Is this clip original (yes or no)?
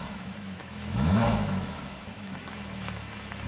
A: no